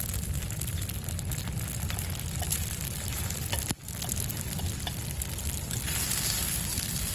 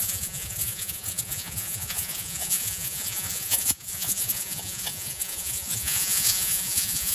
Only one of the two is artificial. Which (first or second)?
second